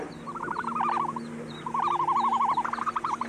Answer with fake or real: real